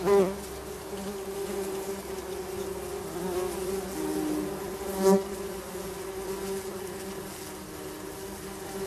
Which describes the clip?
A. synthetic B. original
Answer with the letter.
B